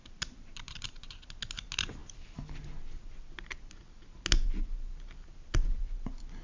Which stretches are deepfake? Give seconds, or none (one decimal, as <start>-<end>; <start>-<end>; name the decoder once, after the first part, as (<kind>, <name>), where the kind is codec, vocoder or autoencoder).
none